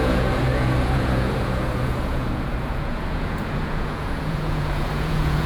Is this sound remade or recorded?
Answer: remade